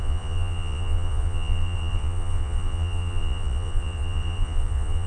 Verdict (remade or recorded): remade